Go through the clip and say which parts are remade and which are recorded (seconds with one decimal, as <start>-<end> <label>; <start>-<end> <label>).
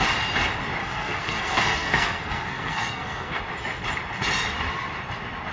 0.0-0.8 recorded; 0.8-3.4 remade; 3.4-5.5 recorded